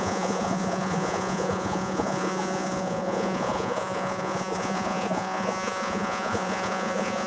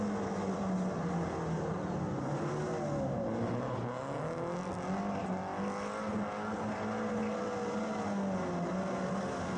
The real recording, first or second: second